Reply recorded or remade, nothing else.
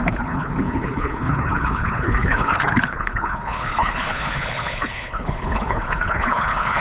remade